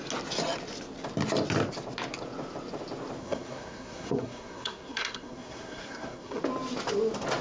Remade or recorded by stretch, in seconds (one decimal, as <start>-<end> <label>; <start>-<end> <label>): 0.0-3.2 recorded; 3.2-6.4 remade; 6.4-7.4 recorded